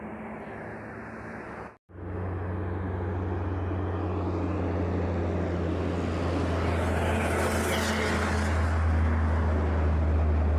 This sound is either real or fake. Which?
real